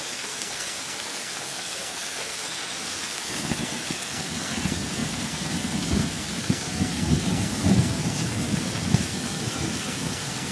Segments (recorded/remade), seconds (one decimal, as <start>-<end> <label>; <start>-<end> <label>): 0.0-10.5 remade